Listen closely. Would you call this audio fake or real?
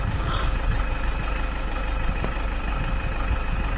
fake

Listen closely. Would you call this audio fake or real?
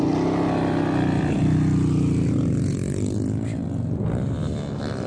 real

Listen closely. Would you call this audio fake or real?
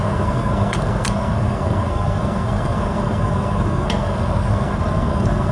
fake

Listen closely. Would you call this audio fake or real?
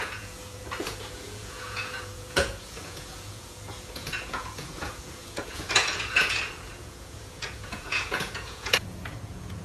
fake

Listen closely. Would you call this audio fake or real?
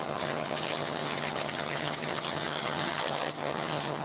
fake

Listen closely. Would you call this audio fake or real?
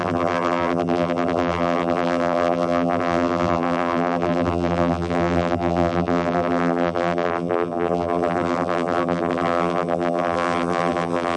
fake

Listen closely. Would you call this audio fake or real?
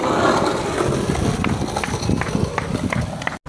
real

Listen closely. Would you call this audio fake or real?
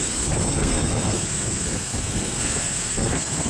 fake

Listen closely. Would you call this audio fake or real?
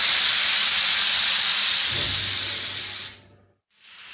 real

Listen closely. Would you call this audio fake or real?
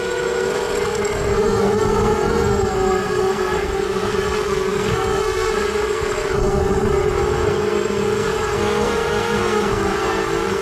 fake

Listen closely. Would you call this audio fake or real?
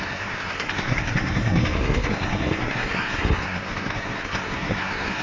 fake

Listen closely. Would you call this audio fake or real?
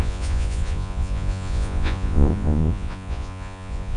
fake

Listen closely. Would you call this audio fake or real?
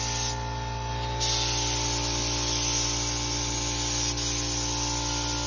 real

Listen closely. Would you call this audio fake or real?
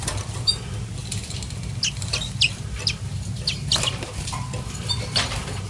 real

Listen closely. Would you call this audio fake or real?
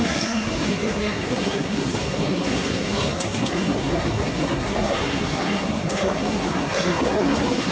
fake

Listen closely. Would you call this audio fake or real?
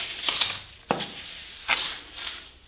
real